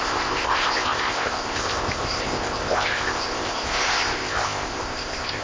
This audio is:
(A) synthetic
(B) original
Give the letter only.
A